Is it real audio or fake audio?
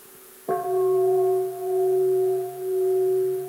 fake